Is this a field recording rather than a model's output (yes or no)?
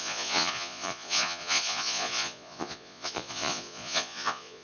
no